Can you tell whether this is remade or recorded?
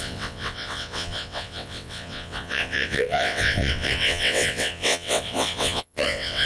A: remade